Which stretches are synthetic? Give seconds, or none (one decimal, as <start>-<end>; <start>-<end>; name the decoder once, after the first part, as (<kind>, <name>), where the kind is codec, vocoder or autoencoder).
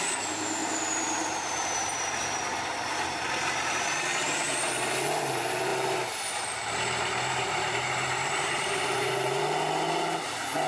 0.6-4.5 (vocoder, BigVGAN v2); 5.7-9.4